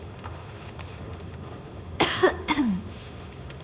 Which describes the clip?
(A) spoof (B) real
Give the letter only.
A